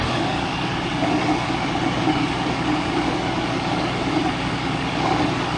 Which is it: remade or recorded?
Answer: remade